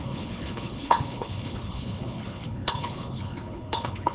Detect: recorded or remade remade